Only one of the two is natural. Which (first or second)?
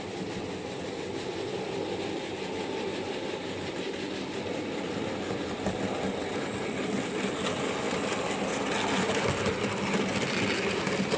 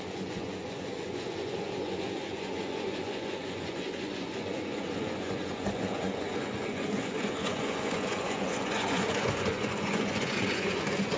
first